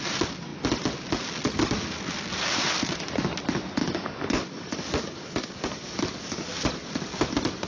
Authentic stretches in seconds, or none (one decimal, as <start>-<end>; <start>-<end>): 0.0-3.8; 6.5-7.7